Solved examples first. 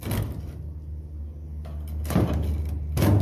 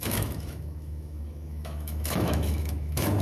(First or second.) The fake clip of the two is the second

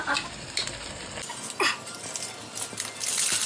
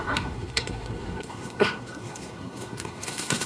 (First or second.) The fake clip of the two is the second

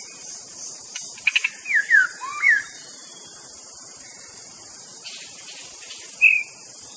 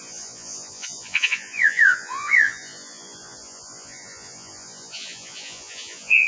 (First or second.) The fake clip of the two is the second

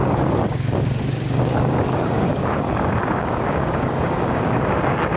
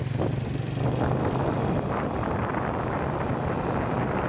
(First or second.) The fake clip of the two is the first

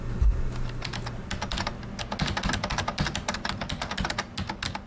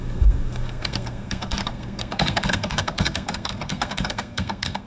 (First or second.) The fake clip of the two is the second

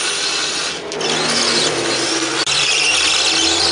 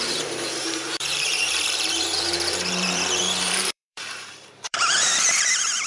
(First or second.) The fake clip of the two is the second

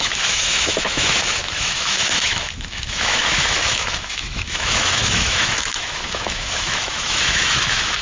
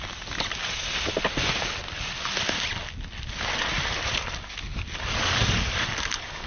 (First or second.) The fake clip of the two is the first